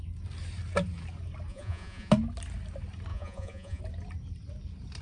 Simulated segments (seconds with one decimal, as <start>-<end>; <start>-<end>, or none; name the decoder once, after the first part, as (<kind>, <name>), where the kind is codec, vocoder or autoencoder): 1.5-2.1 (vocoder, Vocos); 3.1-3.8